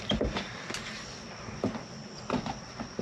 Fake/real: real